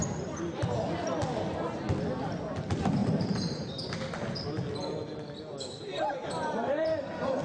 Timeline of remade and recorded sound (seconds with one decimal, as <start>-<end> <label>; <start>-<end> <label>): 0.0-3.0 recorded; 3.0-3.7 remade; 3.7-5.9 recorded; 5.9-7.4 remade